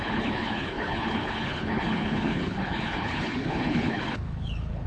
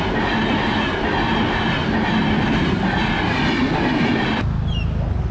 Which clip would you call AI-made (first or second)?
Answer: first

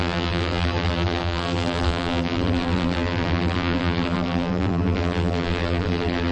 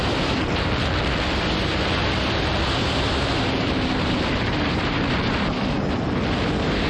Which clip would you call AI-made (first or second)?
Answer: first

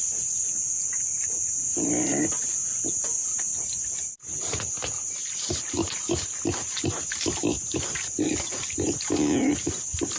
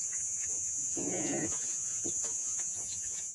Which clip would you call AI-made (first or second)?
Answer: second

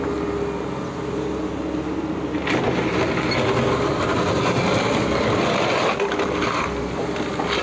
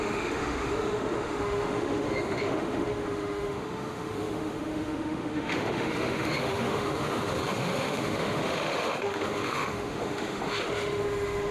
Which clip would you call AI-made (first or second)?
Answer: second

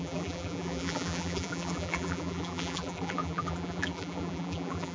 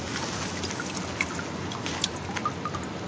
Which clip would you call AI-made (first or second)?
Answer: first